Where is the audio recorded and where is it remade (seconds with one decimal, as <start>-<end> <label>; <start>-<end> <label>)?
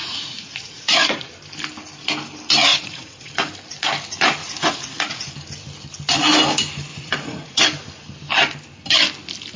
0.0-1.3 remade; 1.3-2.7 recorded; 2.7-3.3 remade; 3.3-4.4 recorded; 4.4-5.3 remade; 5.3-6.9 recorded; 6.9-7.6 remade; 7.6-9.6 recorded